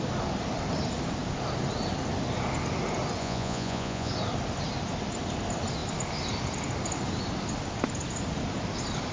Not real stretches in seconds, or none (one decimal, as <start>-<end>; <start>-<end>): 3.2-4.1